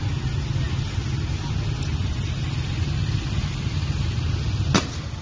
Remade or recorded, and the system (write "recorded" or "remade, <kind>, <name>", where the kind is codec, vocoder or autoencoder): recorded